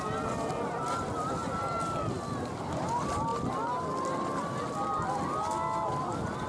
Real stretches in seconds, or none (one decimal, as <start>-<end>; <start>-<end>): 0.0-6.5